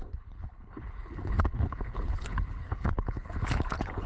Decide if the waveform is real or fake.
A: fake